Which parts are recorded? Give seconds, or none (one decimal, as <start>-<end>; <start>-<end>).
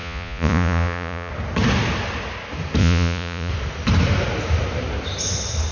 1.3-2.8; 3.5-5.7